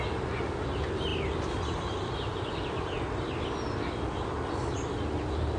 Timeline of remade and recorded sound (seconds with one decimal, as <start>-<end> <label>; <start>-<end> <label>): 0.0-5.6 recorded